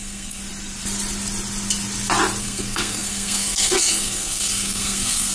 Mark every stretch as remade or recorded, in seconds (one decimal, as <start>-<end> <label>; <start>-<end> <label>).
0.0-0.4 remade; 0.4-2.4 recorded; 2.4-5.3 remade